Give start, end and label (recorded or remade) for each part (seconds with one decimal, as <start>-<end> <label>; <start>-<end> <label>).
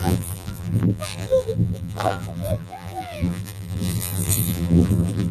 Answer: 0.0-5.3 remade